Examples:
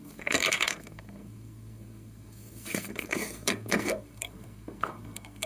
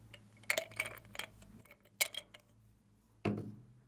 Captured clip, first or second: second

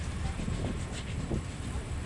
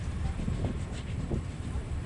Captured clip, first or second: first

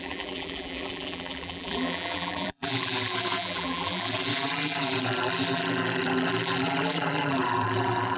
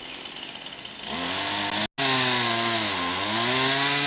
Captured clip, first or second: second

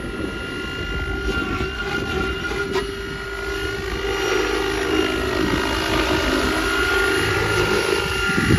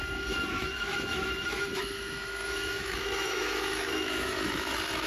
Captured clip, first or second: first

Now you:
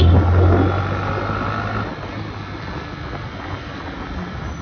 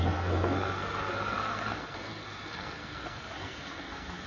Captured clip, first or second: first